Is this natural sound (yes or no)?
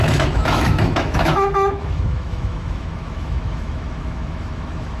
no